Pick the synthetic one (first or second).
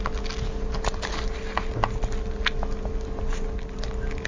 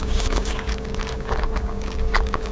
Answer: second